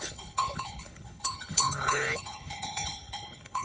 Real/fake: fake